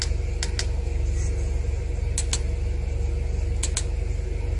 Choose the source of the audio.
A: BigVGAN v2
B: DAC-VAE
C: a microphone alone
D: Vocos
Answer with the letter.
C